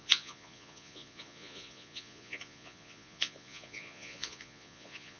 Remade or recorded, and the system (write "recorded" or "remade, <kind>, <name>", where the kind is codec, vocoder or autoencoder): remade, vocoder, Vocos